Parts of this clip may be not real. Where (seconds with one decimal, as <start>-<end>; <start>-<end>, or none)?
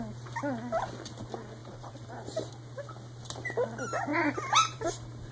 1.6-2.5; 4.1-5.3